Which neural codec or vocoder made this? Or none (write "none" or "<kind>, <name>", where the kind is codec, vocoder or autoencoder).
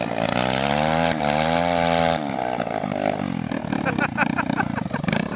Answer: none